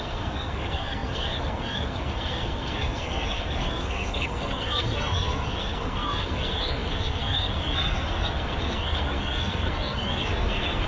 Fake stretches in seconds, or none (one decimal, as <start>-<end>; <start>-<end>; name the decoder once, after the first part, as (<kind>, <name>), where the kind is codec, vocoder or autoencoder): 0.0-10.9 (codec, SNAC)